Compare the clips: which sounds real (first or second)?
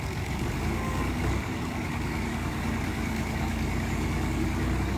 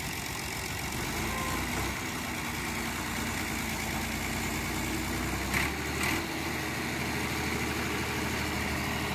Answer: second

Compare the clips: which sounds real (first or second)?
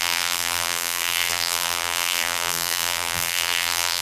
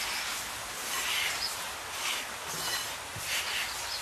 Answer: second